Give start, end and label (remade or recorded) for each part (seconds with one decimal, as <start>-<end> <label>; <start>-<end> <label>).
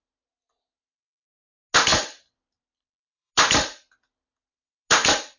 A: 0.0-1.9 recorded; 1.9-3.3 remade; 3.3-5.4 recorded